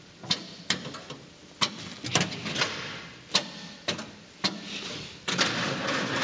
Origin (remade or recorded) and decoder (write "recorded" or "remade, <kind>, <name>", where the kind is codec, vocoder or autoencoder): recorded